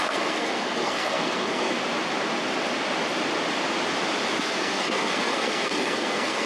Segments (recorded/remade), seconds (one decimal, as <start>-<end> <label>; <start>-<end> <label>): 0.0-1.8 remade; 1.8-4.4 recorded; 4.4-6.5 remade